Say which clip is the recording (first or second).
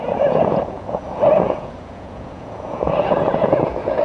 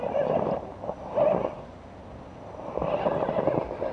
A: second